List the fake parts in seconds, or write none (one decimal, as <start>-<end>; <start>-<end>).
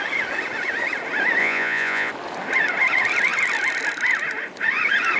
1.4-2.1